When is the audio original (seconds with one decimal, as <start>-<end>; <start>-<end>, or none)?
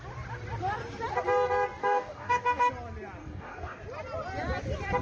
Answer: 0.0-1.8; 2.7-3.2; 3.8-5.0